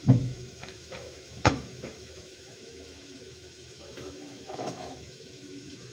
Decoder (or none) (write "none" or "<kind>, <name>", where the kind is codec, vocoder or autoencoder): autoencoder, DAC-VAE